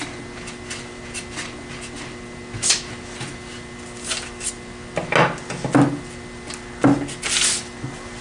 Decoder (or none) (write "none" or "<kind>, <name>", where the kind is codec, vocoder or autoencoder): none